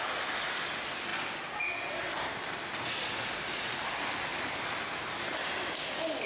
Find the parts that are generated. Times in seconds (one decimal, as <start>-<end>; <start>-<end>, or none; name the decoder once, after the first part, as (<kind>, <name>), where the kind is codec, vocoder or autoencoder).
none